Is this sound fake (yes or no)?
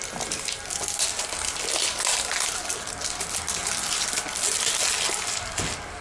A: no